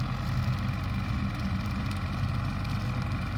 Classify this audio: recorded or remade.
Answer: recorded